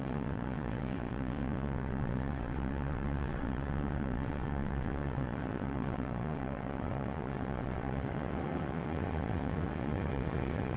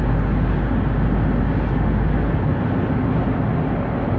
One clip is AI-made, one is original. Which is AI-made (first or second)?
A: first